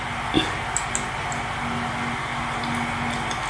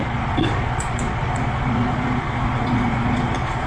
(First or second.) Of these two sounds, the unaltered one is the first